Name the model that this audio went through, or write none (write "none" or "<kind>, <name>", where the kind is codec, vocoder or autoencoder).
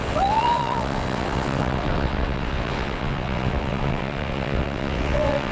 vocoder, WaveNeXt